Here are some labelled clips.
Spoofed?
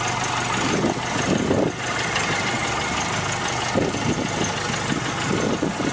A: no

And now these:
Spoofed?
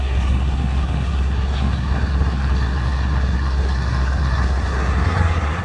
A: yes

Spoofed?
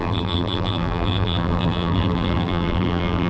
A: yes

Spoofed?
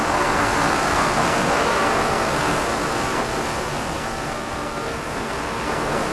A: yes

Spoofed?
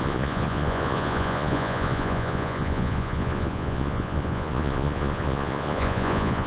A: yes